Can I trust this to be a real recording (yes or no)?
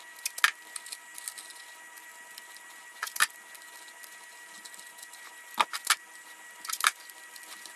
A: yes